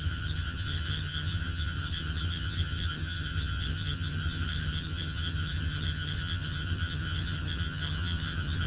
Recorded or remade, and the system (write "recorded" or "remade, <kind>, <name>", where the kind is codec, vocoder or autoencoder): remade, vocoder, HiFi-GAN